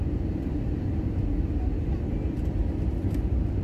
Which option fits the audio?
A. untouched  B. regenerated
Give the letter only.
A